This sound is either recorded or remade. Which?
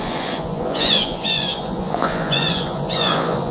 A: remade